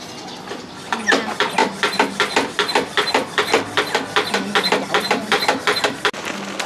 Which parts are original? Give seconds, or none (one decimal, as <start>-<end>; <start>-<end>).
0.0-6.7